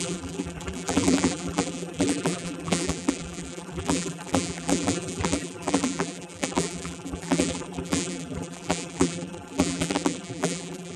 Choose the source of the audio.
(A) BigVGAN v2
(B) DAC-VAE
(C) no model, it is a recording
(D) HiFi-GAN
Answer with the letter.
A